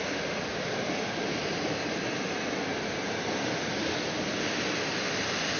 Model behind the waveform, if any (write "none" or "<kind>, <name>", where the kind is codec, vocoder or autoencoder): none